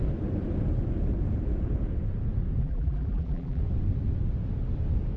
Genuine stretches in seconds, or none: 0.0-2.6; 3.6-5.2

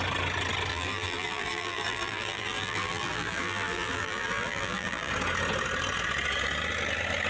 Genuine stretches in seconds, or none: 0.0-0.7; 5.1-7.3

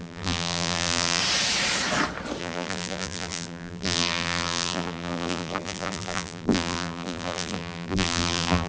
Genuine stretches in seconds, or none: 1.2-2.4

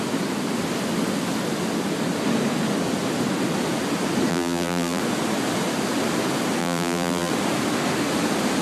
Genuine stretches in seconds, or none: 0.0-4.3; 5.0-6.6; 7.3-8.6